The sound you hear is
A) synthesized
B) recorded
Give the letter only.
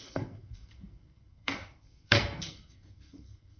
A